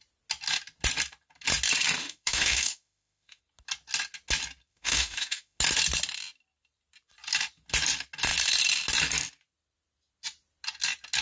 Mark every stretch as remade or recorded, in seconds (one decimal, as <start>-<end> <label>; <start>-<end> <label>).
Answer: 0.0-2.0 recorded; 2.0-3.4 remade; 3.4-4.7 recorded; 4.7-5.6 remade; 5.6-11.2 recorded